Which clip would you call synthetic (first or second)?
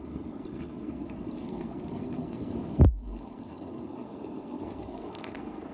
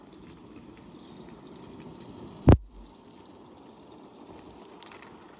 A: first